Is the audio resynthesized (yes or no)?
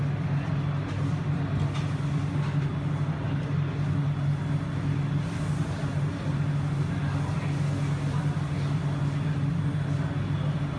no